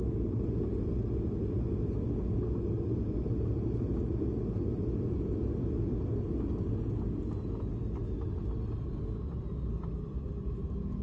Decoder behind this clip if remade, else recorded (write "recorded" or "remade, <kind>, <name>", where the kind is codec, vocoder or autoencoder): recorded